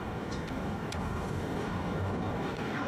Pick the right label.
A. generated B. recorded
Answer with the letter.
A